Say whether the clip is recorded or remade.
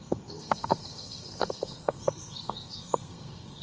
remade